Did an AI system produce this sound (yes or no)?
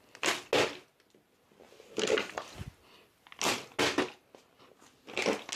no